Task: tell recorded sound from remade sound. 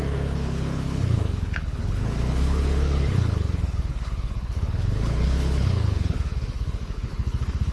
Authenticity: remade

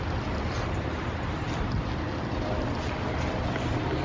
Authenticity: recorded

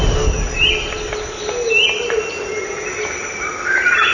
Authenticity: recorded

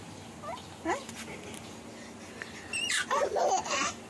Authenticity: recorded